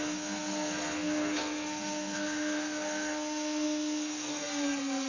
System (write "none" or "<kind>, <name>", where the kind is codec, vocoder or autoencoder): codec, SNAC